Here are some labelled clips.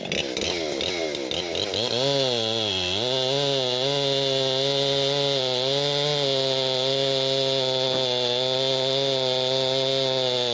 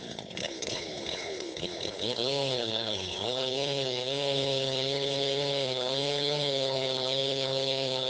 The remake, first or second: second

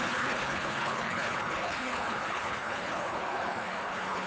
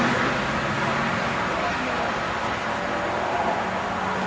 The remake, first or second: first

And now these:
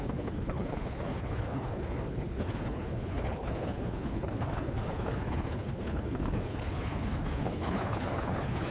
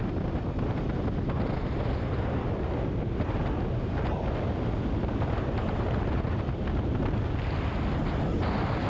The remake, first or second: first